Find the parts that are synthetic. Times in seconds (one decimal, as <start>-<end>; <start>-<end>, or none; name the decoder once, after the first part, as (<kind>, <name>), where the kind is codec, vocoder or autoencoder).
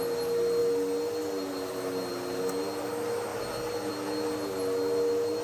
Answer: none